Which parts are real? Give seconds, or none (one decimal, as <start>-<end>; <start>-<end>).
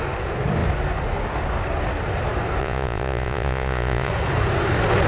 0.0-2.6; 4.1-5.1